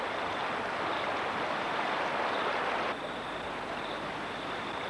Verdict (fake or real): real